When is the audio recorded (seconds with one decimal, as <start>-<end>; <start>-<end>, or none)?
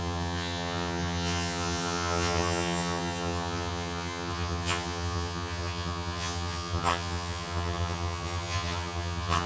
none